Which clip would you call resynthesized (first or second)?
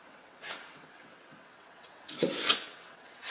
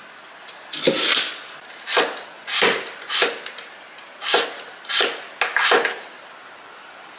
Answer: first